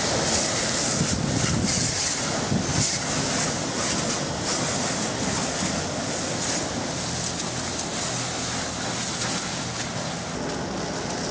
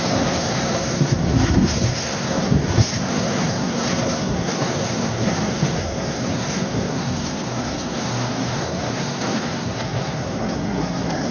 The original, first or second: first